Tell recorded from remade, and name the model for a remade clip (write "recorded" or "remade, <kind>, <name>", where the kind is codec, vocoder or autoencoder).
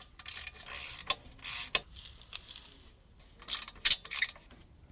recorded